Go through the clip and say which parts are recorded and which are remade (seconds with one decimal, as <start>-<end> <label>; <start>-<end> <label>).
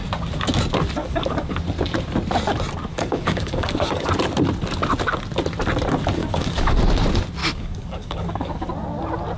0.0-1.0 recorded; 1.0-1.5 remade; 1.5-2.9 recorded; 2.9-4.1 remade; 4.1-6.2 recorded; 6.2-6.8 remade; 6.8-7.4 recorded; 7.4-8.7 remade; 8.7-9.4 recorded